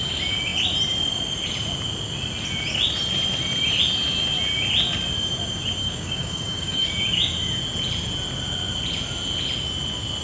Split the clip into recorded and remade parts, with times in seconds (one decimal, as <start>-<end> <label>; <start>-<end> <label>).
0.0-5.8 recorded; 5.8-6.9 remade; 6.9-10.2 recorded